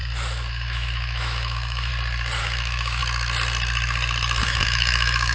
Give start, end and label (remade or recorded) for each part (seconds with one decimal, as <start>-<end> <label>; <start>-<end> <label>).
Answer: 0.0-0.5 recorded; 0.5-1.9 remade; 1.9-2.4 recorded; 2.4-3.0 remade; 3.0-4.4 recorded; 4.4-5.3 remade